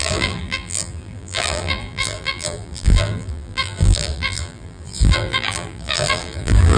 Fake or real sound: fake